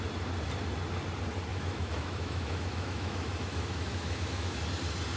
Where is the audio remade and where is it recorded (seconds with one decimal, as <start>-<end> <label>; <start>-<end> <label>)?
0.0-1.5 recorded; 1.5-4.6 remade; 4.6-5.2 recorded